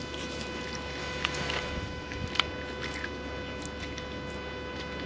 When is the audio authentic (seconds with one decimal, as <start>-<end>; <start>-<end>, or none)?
0.0-1.0; 2.3-5.1